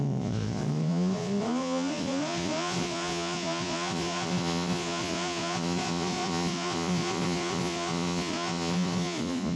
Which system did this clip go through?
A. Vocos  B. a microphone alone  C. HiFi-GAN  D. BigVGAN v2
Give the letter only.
A